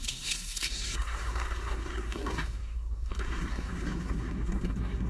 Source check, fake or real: fake